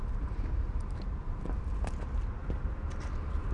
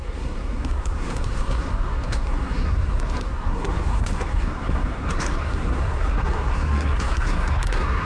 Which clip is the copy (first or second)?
second